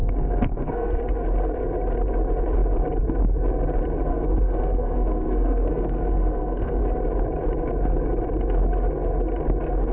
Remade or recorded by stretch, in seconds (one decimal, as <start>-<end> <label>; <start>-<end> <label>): 0.0-1.0 remade; 1.0-4.1 recorded; 4.1-6.8 remade; 6.8-9.9 recorded